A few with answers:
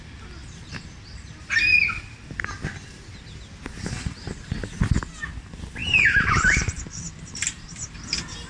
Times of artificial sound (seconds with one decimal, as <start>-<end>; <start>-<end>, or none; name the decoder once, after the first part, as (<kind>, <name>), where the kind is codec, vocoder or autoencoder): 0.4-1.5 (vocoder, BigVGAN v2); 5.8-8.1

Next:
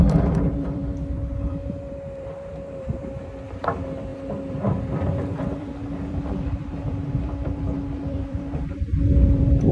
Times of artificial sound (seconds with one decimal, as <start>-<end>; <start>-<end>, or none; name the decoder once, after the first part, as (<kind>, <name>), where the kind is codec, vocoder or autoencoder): 0.0-0.8 (vocoder, BigVGAN v2); 1.5-9.7

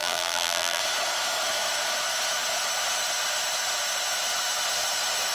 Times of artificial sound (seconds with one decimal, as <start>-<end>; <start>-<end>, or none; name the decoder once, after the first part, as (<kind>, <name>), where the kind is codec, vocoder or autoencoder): 0.0-0.8 (vocoder, BigVGAN v2)